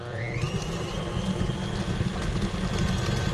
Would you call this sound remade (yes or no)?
no